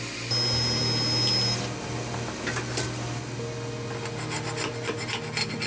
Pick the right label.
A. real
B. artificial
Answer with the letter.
A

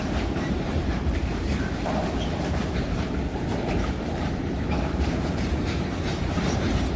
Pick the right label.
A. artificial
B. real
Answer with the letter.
A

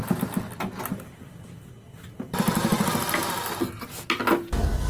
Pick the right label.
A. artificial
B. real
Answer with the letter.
B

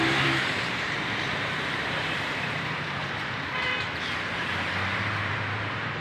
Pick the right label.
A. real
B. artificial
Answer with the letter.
B